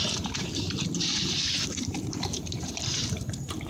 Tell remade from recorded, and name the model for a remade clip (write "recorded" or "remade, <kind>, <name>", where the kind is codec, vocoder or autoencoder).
remade, vocoder, BigVGAN v2